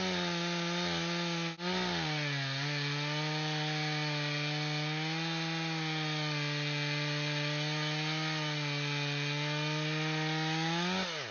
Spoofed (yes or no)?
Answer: no